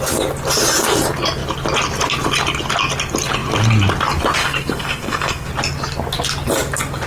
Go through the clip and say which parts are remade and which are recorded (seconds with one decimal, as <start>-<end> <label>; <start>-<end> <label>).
0.0-4.4 recorded; 4.4-5.5 remade; 5.5-7.1 recorded